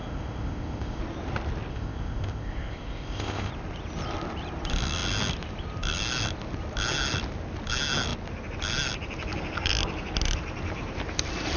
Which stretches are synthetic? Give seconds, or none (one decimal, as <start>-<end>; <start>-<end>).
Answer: 0.0-1.0; 1.7-3.5